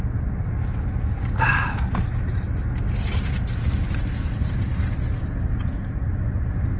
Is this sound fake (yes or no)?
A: no